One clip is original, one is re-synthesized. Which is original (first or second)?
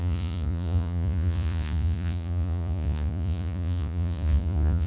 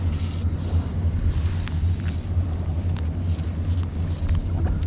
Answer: second